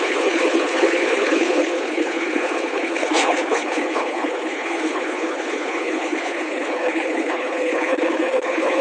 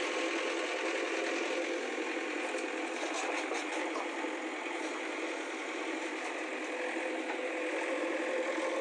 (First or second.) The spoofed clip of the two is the first